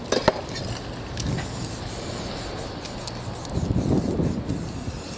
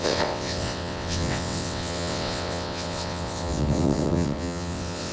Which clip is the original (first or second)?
first